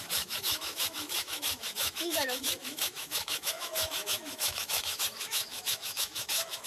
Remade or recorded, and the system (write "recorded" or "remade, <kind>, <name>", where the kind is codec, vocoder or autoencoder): remade, autoencoder, DAC-VAE